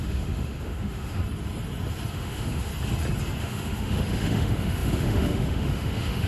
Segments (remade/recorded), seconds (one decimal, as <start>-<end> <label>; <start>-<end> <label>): 0.0-1.2 remade; 1.2-2.1 recorded; 2.1-2.7 remade; 2.7-3.4 recorded; 3.4-6.3 remade

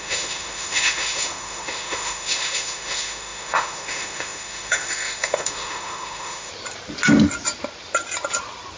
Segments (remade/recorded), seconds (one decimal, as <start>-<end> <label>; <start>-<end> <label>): 0.0-6.5 remade; 6.5-8.8 recorded

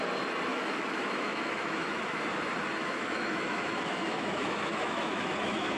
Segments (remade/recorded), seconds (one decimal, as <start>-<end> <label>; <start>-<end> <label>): 0.0-0.5 recorded; 0.5-2.2 remade; 2.2-2.8 recorded; 2.8-5.8 remade